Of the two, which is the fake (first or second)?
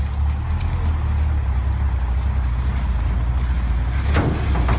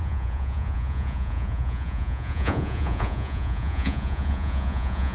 second